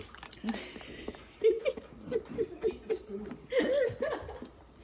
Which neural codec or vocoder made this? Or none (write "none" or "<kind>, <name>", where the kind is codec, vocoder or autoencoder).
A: none